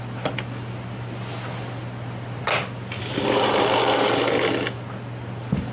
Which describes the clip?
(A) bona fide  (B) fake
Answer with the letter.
A